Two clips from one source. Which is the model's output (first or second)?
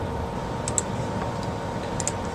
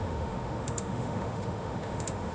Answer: second